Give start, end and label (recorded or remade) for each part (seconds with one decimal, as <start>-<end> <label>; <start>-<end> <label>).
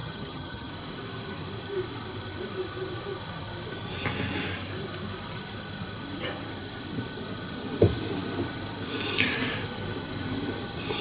0.0-0.7 remade; 0.7-11.0 recorded